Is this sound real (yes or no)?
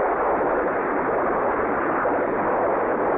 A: yes